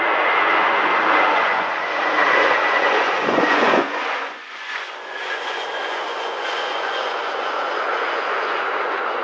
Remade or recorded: remade